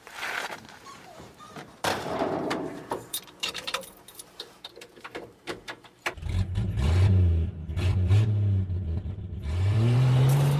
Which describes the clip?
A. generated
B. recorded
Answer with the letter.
A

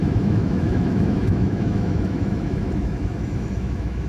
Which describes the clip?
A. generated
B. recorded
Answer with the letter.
A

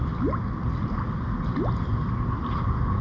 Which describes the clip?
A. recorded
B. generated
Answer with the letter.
A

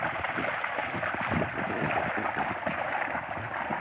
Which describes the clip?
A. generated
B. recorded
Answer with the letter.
B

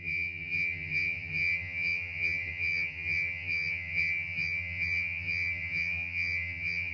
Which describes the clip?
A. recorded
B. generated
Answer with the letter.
B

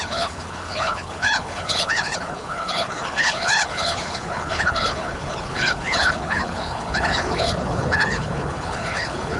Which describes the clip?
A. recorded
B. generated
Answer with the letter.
B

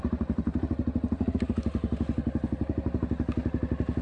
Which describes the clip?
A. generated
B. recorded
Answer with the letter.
B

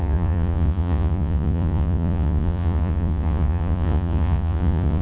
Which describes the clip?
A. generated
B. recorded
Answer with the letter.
A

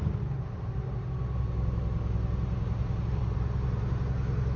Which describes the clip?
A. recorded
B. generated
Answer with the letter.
A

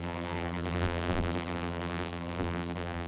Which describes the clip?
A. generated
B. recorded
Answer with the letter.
A